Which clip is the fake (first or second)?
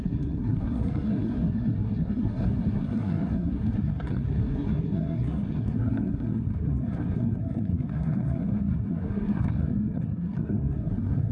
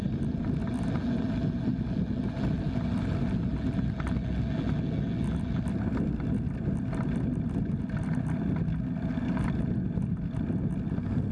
first